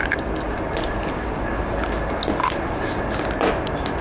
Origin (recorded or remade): recorded